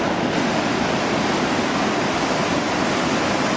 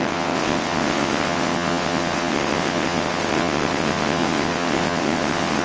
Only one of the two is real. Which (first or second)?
first